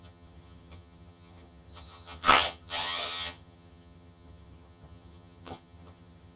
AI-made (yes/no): yes